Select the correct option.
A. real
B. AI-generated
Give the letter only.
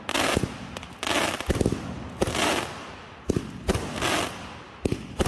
A